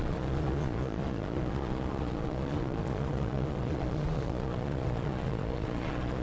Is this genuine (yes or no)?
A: no